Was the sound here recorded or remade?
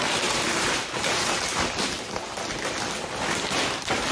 remade